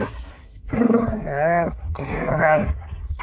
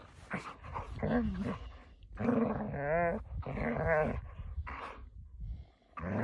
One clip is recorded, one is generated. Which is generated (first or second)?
first